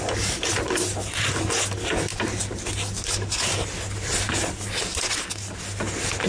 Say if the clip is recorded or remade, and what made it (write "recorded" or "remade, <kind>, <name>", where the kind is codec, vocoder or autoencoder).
recorded